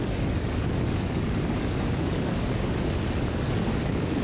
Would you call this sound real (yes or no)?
no